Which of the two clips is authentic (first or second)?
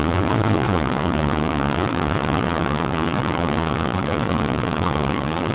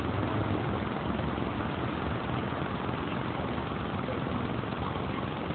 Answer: second